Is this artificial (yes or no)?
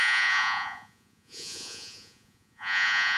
yes